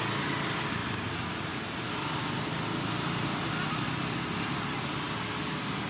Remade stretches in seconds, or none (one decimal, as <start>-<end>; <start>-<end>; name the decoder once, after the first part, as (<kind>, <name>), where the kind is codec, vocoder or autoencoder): none